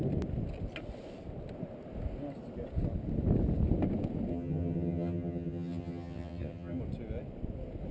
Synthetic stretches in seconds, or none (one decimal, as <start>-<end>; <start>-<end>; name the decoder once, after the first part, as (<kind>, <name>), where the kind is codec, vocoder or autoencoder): 4.3-6.8 (vocoder, HiFi-GAN)